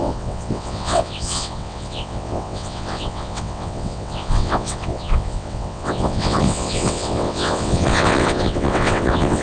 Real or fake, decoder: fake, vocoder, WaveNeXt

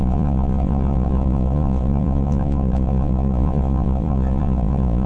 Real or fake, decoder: fake, vocoder, Vocos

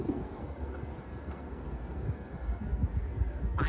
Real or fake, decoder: fake, codec, SNAC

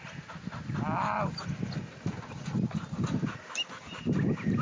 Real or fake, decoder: real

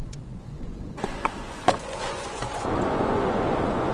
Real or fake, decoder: fake, vocoder, Vocos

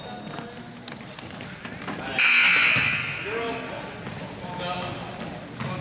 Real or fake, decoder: real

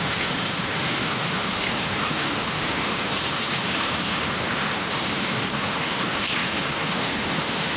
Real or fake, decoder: fake, autoencoder, DAC-VAE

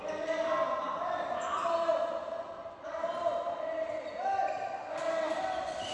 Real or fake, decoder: real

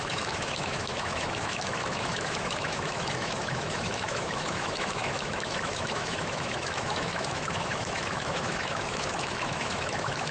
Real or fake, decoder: fake, autoencoder, DAC-VAE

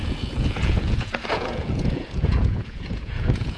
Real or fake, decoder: fake, vocoder, Vocos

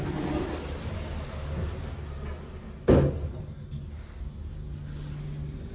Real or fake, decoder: real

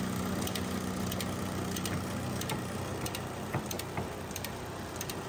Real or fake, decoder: real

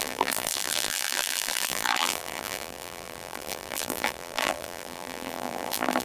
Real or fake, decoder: fake, vocoder, BigVGAN v2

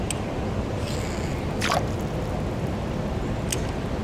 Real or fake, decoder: real